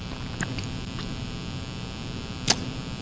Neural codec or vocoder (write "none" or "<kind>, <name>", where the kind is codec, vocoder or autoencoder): none